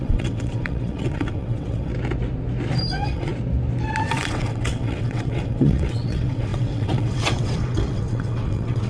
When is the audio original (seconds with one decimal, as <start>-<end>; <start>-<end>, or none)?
1.9-2.9; 3.3-4.0